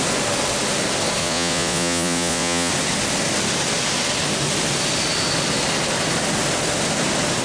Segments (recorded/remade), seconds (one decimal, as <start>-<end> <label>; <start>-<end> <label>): 0.0-1.2 recorded; 1.2-2.7 remade; 2.7-7.4 recorded